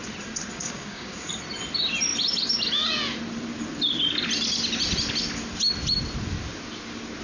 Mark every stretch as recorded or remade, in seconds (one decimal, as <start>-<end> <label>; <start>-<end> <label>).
0.0-0.6 recorded; 0.6-1.3 remade; 1.3-7.2 recorded